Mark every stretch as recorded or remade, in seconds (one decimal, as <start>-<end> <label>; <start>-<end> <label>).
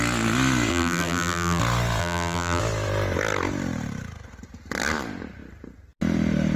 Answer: 0.0-0.7 recorded; 0.7-1.6 remade; 1.6-2.0 recorded; 2.0-2.6 remade; 2.6-6.6 recorded